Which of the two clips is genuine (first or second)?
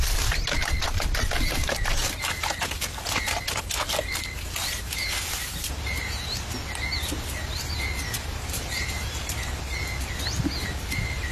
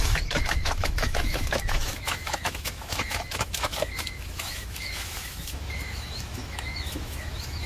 first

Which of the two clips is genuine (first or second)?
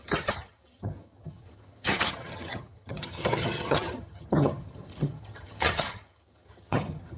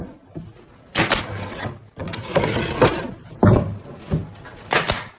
second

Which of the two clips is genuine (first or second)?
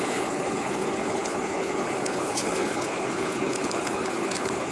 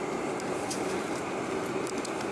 second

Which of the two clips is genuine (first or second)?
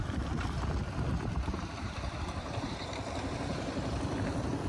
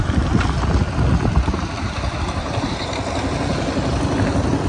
second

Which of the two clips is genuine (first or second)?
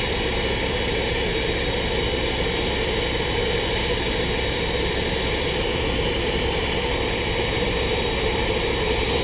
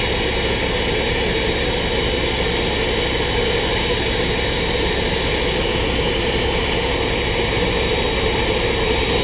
second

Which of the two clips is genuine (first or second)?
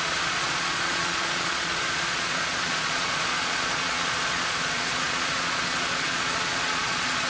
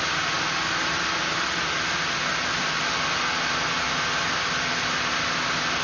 second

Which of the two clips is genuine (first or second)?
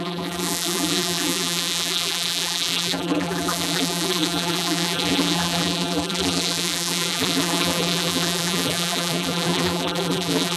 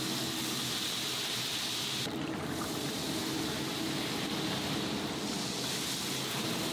second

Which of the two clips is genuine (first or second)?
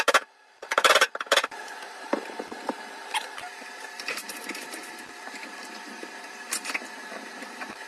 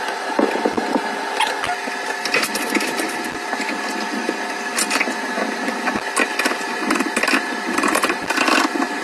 second